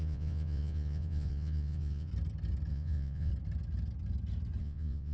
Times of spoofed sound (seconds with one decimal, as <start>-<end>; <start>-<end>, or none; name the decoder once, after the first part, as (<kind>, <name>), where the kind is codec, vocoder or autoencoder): 0.0-2.1 (vocoder, Vocos); 2.7-3.3; 4.6-5.1